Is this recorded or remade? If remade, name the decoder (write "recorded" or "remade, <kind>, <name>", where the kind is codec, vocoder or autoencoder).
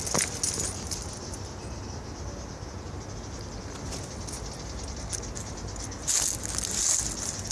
recorded